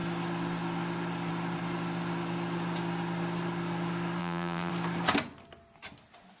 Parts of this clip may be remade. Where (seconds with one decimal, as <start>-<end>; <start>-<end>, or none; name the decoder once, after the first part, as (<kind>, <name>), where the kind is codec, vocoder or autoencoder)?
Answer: 4.2-4.7 (vocoder, BigVGAN v2)